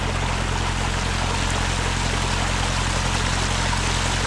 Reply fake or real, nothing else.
real